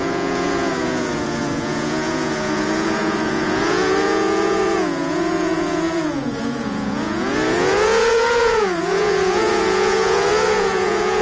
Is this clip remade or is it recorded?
remade